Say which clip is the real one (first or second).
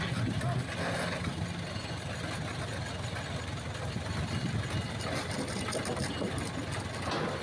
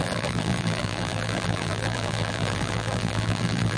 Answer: first